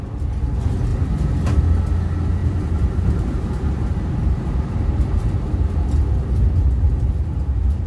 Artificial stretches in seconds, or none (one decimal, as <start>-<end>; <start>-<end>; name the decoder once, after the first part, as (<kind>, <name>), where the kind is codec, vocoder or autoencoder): 0.9-1.6 (vocoder, BigVGAN v2); 2.4-6.0